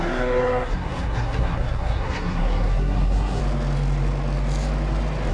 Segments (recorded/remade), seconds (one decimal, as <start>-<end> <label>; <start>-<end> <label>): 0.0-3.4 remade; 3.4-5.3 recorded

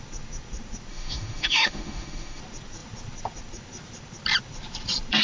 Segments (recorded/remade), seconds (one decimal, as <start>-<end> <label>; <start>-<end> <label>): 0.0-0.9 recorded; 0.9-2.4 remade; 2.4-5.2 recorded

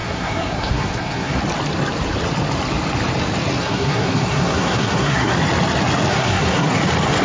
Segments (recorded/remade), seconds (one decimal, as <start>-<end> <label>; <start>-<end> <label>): 0.0-1.4 remade; 1.4-3.6 recorded; 3.6-5.3 remade; 5.3-6.1 recorded; 6.1-6.8 remade; 6.8-7.2 recorded

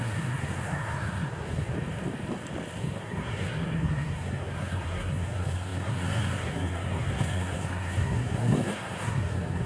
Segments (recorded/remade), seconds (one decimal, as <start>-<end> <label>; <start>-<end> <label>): 0.0-1.7 remade; 1.7-2.8 recorded; 2.8-9.7 remade